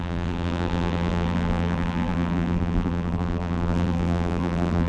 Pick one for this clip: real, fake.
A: fake